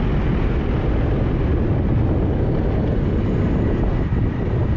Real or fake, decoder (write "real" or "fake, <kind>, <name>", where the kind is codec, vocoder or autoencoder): real